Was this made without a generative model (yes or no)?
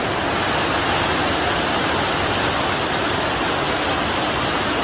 yes